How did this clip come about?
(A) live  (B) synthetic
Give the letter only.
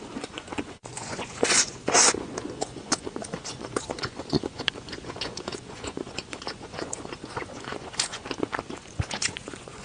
B